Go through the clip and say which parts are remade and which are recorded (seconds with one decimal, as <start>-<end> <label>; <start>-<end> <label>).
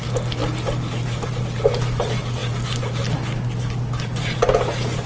0.0-5.1 recorded